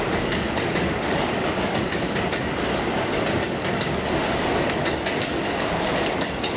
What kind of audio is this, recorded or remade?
remade